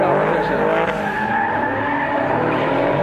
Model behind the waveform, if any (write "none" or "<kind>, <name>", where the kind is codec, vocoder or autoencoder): none